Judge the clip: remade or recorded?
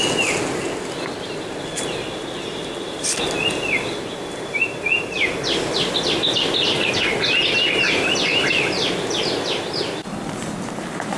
recorded